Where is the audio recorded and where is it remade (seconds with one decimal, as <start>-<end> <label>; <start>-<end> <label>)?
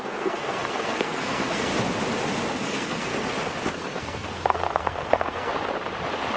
0.0-1.7 remade; 1.7-2.6 recorded; 2.6-3.1 remade; 3.1-3.7 recorded; 3.7-5.5 remade; 5.5-6.4 recorded